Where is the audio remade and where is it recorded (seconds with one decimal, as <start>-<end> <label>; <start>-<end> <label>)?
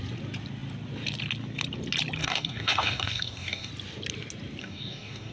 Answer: 0.0-2.2 recorded; 2.2-3.7 remade; 3.7-4.6 recorded; 4.6-5.3 remade